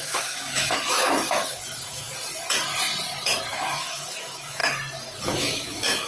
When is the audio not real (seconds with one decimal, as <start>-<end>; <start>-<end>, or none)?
0.0-2.1; 3.5-4.6; 5.2-6.1